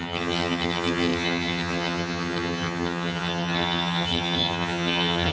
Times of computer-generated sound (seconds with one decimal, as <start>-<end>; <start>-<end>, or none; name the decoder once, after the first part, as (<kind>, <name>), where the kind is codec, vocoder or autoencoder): 0.0-5.3 (vocoder, HiFi-GAN)